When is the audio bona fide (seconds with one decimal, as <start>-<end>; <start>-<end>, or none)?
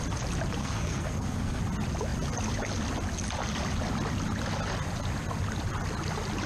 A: 0.0-0.6; 1.6-6.5